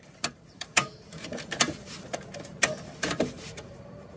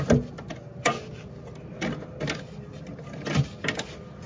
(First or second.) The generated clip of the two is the first